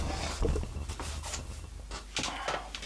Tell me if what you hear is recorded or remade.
recorded